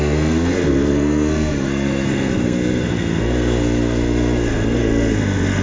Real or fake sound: fake